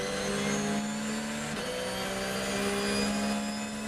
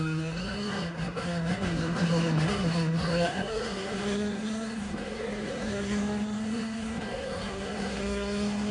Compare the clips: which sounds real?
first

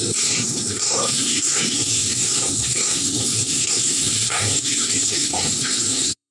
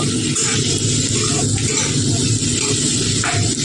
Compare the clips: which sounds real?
second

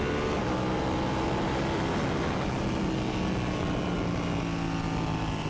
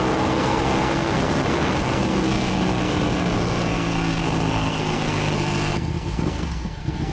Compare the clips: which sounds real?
first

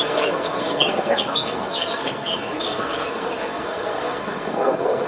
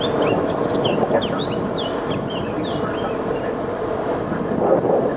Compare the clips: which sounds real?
second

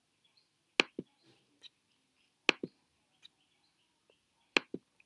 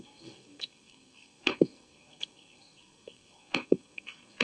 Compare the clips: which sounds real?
first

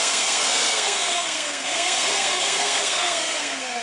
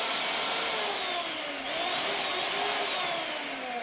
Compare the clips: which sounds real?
second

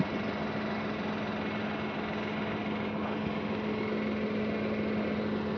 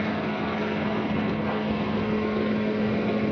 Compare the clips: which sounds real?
first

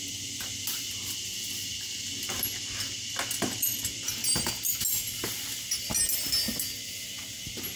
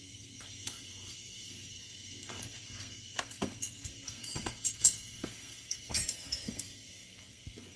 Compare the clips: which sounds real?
first